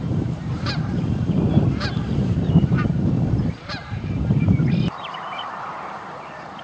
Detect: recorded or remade remade